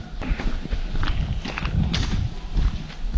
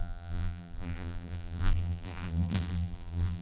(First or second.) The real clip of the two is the first